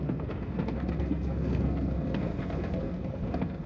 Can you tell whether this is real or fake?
fake